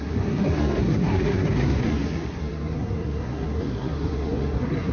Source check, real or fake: fake